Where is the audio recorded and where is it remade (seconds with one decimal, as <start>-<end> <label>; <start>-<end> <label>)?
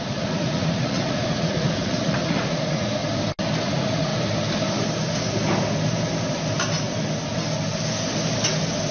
0.0-3.0 remade; 3.0-3.6 recorded; 3.6-4.1 remade; 4.1-8.9 recorded